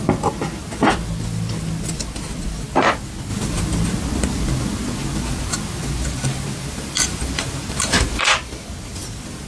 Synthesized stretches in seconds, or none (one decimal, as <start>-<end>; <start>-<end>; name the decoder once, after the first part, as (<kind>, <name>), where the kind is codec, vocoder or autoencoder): none